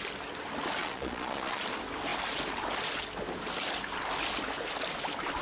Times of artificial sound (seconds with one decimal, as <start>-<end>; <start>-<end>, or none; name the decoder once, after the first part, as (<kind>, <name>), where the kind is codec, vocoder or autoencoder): 0.8-1.6 (vocoder, Vocos)